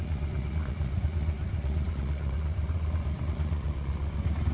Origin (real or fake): fake